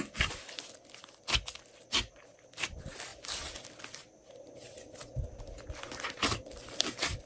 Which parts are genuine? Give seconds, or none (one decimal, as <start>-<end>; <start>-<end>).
0.0-7.3